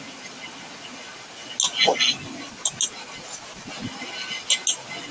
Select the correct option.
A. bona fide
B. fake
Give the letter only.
A